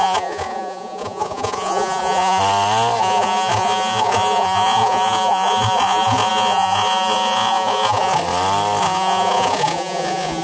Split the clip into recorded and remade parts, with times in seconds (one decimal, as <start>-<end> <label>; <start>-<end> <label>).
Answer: 0.0-2.4 remade; 2.4-3.0 recorded; 3.0-8.2 remade; 8.2-8.8 recorded; 8.8-10.4 remade